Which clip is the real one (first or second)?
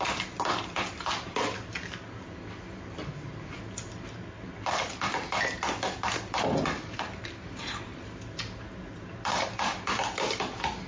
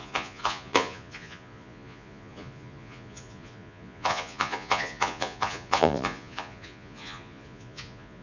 first